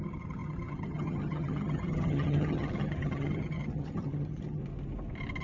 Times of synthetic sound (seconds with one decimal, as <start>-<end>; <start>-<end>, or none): 0.0-4.6